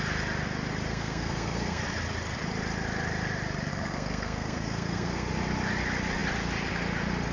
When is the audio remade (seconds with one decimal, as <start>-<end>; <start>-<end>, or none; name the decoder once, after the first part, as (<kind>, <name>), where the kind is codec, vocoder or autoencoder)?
0.9-1.8 (codec, SNAC); 3.7-5.3